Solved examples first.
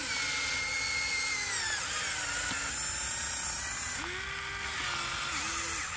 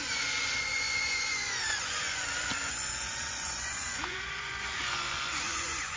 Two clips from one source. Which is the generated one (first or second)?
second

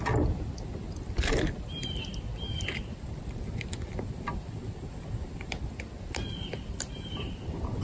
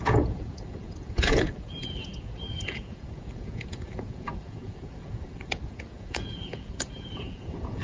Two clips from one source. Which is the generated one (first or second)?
second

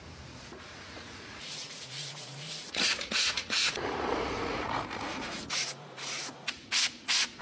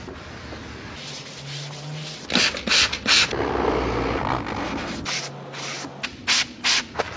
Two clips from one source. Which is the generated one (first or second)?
first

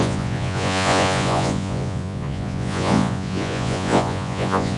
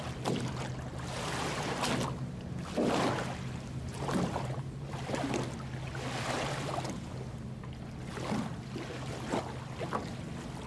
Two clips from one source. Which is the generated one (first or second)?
first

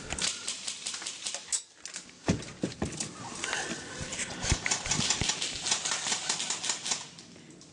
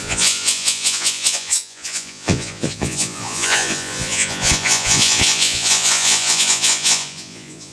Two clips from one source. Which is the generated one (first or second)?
second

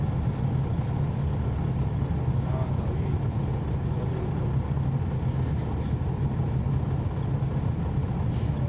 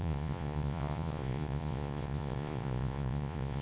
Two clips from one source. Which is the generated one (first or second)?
second